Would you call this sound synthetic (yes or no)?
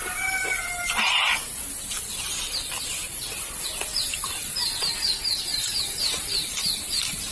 no